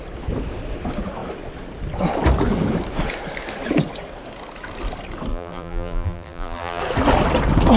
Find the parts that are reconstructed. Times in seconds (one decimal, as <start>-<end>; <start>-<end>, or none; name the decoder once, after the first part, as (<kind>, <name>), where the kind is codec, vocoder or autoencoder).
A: 5.3-6.8 (vocoder, BigVGAN v2)